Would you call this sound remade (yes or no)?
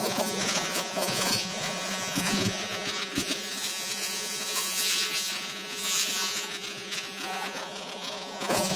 yes